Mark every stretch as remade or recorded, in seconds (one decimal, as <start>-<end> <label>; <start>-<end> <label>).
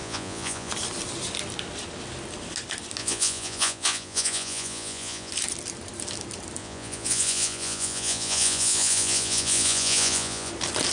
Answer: 0.0-0.7 remade; 0.7-3.0 recorded; 3.0-5.3 remade; 5.3-6.6 recorded; 6.6-10.5 remade; 10.5-10.9 recorded